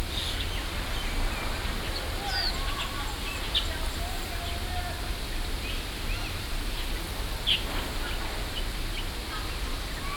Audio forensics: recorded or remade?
recorded